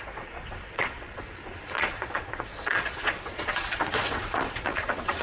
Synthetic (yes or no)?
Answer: yes